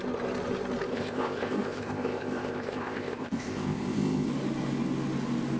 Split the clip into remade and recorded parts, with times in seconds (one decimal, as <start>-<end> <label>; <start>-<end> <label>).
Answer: 0.0-0.9 recorded; 0.9-4.3 remade; 4.3-5.6 recorded